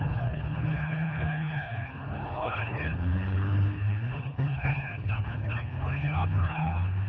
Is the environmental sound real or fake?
fake